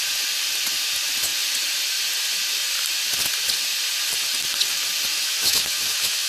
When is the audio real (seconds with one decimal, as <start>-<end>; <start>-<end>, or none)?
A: 0.0-5.1